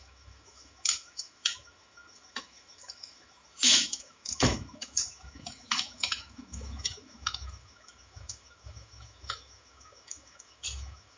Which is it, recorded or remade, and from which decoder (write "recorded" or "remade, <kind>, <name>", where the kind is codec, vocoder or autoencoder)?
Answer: remade, autoencoder, DAC-VAE